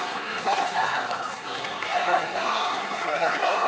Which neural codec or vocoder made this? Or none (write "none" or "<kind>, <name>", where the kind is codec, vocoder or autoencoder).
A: codec, SNAC